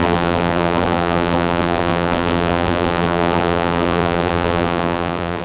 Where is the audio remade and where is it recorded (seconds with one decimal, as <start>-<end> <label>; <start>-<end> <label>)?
0.0-5.4 remade